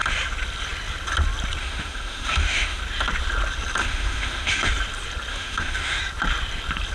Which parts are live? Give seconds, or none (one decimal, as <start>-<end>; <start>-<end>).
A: 0.0-1.6; 2.8-3.8; 4.7-5.3; 6.0-6.9